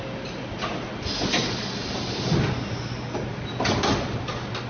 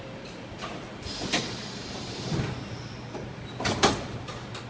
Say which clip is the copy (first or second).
second